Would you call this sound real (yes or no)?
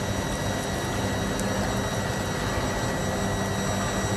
yes